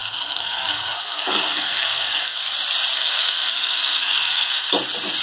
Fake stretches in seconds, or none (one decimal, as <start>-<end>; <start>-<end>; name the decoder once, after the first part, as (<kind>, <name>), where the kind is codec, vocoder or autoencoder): 0.0-2.4 (codec, SNAC); 2.9-4.7